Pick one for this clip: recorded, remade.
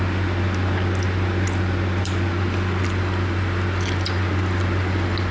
recorded